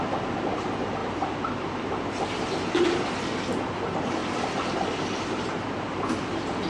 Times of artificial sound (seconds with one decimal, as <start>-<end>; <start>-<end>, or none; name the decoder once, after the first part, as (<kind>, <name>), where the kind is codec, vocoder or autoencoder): 1.0-2.5 (vocoder, BigVGAN v2); 4.2-5.0